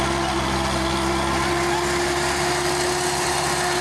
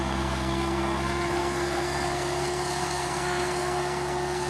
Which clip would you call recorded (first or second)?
first